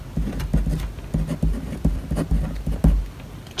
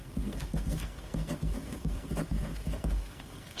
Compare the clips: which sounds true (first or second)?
first